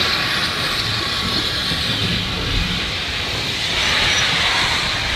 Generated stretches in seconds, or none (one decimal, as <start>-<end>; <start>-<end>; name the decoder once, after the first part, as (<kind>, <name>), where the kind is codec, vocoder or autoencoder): none